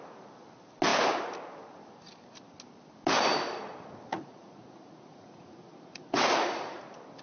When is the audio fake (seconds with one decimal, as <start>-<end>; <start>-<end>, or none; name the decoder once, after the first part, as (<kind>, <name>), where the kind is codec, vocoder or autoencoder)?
4.1-6.8 (vocoder, Vocos)